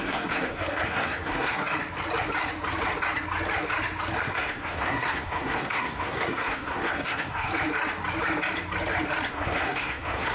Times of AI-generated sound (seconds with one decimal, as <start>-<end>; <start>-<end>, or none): 0.0-1.6; 4.2-7.5; 9.3-10.3